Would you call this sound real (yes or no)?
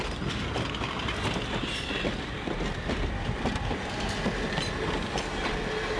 yes